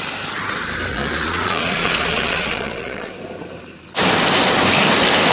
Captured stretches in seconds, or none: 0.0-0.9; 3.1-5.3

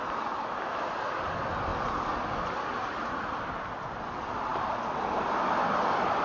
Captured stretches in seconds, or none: 0.0-2.8; 3.4-6.2

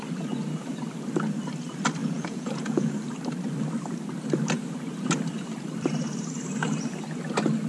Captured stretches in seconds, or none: 0.0-2.0; 2.9-7.7

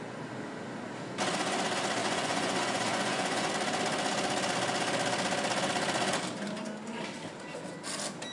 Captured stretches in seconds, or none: 0.0-2.0; 3.5-8.3

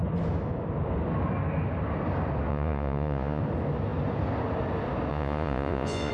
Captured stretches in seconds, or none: 0.0-2.5; 3.4-5.1